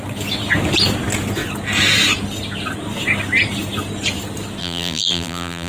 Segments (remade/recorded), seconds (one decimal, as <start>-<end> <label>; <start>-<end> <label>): 0.0-4.6 recorded; 4.6-5.7 remade